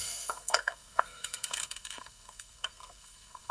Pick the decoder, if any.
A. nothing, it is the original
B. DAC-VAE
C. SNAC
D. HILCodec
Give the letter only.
C